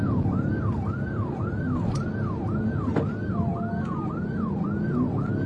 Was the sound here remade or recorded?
recorded